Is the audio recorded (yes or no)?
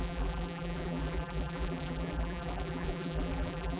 no